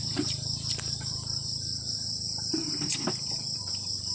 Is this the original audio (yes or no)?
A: no